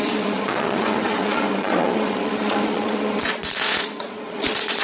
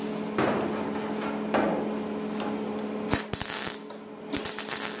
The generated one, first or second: first